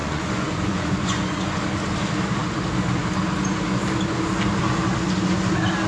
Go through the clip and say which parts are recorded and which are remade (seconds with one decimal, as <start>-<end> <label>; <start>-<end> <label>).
0.0-1.6 remade; 1.6-5.9 recorded